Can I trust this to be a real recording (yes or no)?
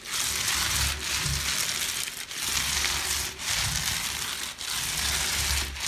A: yes